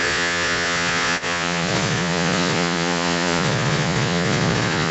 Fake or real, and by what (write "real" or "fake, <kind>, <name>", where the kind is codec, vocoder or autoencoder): fake, vocoder, Vocos